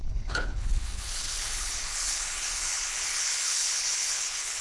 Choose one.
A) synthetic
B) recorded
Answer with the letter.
A